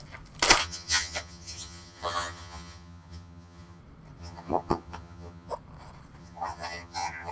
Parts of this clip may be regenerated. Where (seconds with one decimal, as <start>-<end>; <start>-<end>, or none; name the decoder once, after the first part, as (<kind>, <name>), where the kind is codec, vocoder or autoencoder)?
0.6-3.8 (vocoder, HiFi-GAN); 4.2-5.5; 6.2-7.3